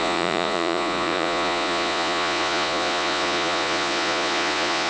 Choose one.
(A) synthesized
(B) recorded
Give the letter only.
A